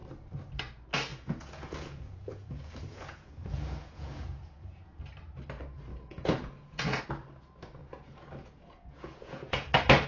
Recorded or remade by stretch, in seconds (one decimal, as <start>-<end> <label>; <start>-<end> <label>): 0.0-1.1 recorded; 1.1-5.0 remade; 5.0-5.9 recorded; 5.9-7.0 remade; 7.0-7.8 recorded; 7.8-9.7 remade; 9.7-10.1 recorded